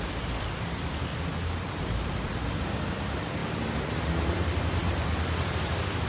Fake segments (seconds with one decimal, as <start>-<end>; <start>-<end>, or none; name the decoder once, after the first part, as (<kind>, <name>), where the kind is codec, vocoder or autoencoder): 0.0-1.1 (vocoder, BigVGAN v2); 1.8-4.8; 5.3-6.1